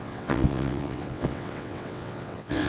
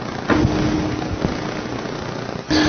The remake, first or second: first